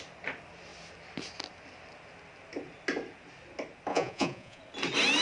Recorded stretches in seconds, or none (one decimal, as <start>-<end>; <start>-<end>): 0.0-3.9; 4.6-5.2